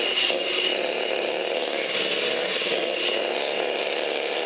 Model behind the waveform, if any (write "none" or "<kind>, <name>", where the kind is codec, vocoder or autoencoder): none